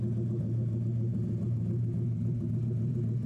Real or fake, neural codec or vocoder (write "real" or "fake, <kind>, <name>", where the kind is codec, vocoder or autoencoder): real